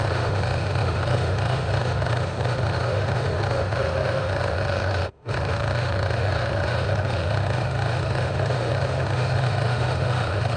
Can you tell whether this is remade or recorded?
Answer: remade